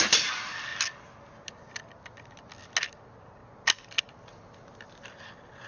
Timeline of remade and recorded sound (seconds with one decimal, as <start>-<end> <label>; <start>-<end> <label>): 0.0-5.7 recorded